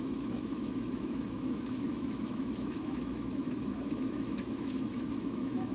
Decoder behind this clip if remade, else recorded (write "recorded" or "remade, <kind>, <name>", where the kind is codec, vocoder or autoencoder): remade, autoencoder, DAC-VAE